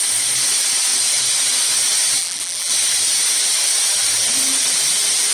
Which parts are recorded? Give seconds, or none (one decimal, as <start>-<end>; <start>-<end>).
0.0-2.2; 2.7-5.3